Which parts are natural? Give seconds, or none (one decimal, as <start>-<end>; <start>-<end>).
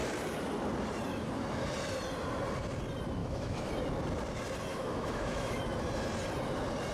0.0-3.2; 3.7-4.7; 5.6-6.9